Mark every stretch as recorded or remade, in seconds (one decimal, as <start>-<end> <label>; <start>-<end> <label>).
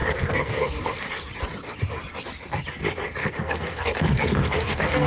0.0-1.3 remade; 1.3-3.2 recorded; 3.2-5.1 remade